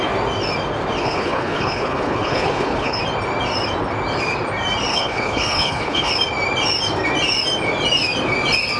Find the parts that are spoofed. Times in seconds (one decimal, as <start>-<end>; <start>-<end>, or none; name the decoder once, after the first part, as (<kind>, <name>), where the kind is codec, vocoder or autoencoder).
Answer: 1.0-3.0 (codec, HILCodec); 4.9-6.1